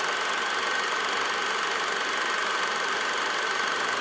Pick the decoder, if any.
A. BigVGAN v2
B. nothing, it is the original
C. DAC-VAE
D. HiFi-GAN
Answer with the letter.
B